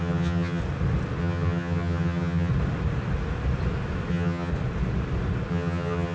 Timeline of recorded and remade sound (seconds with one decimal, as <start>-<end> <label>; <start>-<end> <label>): 0.0-0.6 remade; 0.6-1.2 recorded; 1.2-2.5 remade; 2.5-4.1 recorded; 4.1-4.5 remade; 4.5-5.5 recorded; 5.5-6.1 remade